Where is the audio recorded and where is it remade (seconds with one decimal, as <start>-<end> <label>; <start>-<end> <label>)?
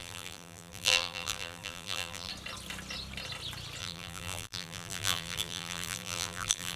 0.0-2.3 remade; 2.3-3.8 recorded; 3.8-6.8 remade